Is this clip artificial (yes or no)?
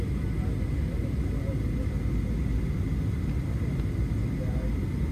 no